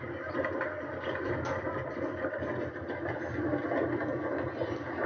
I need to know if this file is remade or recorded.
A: recorded